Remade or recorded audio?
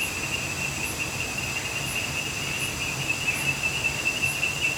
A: recorded